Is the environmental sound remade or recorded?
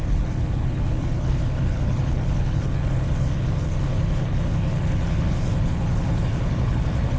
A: remade